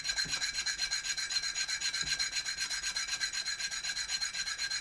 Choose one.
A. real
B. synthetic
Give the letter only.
A